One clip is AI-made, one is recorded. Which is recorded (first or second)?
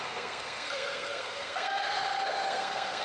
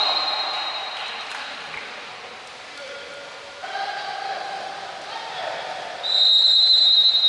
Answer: second